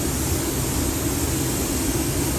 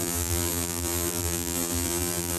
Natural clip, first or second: first